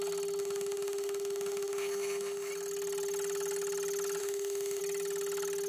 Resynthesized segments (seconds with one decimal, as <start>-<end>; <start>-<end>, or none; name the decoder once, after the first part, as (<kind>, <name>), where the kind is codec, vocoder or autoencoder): 0.4-2.5 (autoencoder, DAC-VAE); 4.2-4.8